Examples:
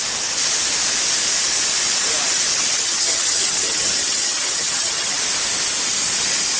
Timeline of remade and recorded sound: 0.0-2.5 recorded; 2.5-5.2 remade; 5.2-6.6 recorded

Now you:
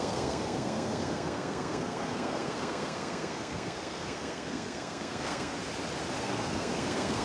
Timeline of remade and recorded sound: 0.0-5.6 remade; 5.6-6.2 recorded; 6.2-7.2 remade